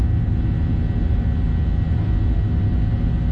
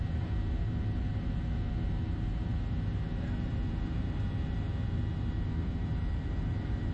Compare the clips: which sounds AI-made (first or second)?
second